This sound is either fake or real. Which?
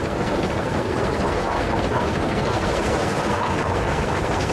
fake